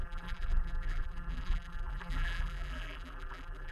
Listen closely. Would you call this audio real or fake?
fake